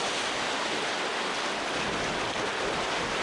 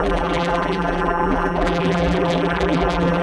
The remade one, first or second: second